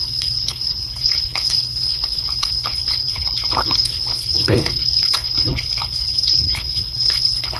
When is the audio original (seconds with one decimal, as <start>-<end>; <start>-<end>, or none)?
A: none